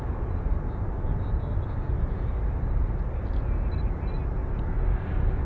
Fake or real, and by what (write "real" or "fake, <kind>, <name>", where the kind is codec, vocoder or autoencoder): real